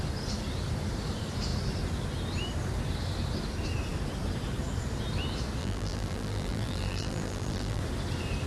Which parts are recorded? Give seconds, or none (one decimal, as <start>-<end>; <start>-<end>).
0.0-5.6; 7.8-8.5